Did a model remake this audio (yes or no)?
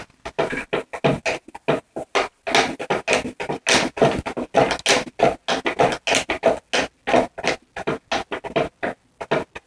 no